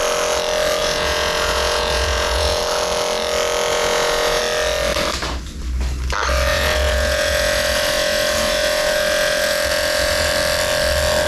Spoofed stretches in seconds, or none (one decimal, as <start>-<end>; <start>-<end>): 0.8-2.6; 3.7-4.4; 6.5-10.3